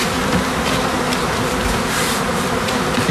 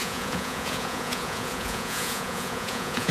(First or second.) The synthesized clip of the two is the second